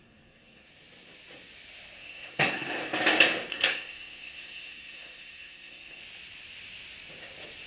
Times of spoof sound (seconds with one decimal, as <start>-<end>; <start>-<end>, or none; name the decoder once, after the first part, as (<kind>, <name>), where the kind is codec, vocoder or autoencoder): 0.0-0.7 (codec, SNAC); 2.0-2.8; 3.5-6.0